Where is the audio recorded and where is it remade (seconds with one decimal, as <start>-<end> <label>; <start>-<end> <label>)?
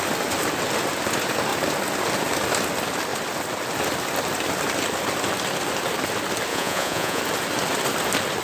0.0-6.5 recorded; 6.5-7.2 remade; 7.2-8.4 recorded